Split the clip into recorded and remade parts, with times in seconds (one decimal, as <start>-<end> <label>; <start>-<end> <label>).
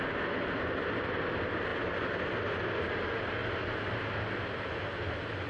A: 0.0-5.5 recorded